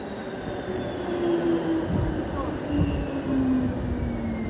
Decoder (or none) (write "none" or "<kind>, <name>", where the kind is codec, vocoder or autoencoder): none